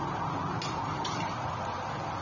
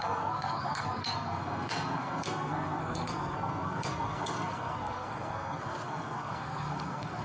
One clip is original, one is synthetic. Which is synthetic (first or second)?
second